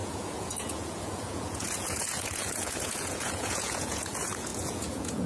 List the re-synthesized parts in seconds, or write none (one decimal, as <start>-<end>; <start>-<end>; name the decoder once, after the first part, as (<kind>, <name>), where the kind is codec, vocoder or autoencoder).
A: 0.0-5.3 (vocoder, Vocos)